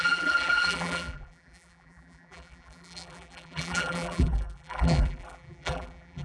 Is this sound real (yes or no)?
no